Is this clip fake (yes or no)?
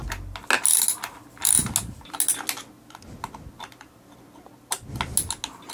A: no